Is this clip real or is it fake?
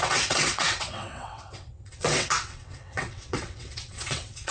fake